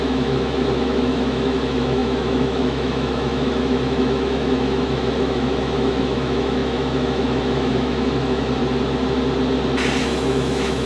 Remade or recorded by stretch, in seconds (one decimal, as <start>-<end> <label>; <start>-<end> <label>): 0.0-8.6 remade; 8.6-10.0 recorded; 10.0-10.9 remade